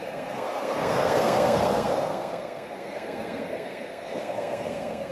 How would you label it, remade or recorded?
remade